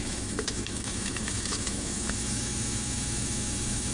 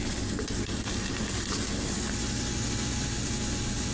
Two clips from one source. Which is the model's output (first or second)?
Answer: first